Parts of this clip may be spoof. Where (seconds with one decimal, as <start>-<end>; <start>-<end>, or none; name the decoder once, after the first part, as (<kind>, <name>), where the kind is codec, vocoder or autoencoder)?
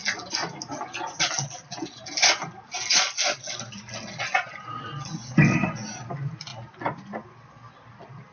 none